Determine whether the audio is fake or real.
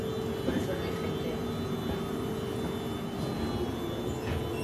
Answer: real